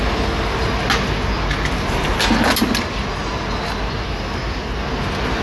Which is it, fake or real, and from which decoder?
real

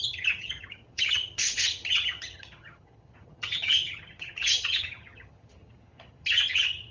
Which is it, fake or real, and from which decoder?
fake, vocoder, HiFi-GAN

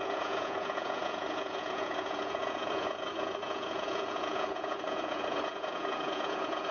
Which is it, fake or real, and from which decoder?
fake, vocoder, Vocos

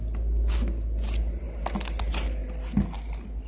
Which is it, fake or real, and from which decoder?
real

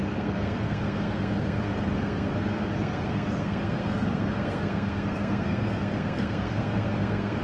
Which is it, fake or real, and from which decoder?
fake, codec, SNAC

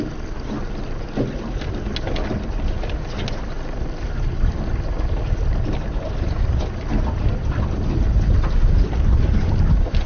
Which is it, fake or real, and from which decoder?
real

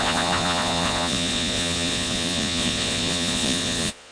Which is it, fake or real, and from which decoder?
fake, vocoder, Vocos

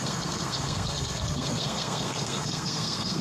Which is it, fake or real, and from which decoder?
fake, codec, SNAC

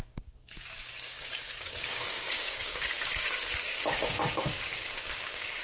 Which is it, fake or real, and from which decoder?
fake, codec, DAC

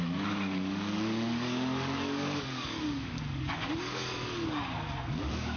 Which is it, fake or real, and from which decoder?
fake, codec, DAC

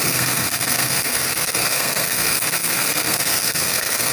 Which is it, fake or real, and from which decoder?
fake, codec, SNAC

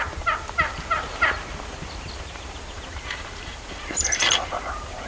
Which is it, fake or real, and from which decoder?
fake, vocoder, BigVGAN v2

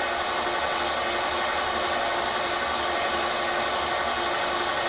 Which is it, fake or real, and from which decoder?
real